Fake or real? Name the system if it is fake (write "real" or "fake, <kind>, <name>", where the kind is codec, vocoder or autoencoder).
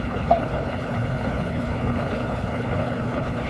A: fake, codec, HILCodec